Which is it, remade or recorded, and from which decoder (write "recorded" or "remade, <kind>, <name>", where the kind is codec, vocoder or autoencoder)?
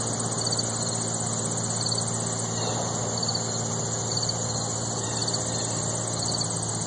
recorded